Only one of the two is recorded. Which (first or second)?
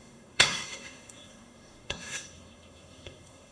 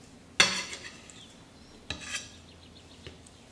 second